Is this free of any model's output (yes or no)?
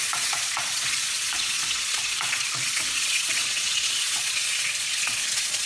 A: no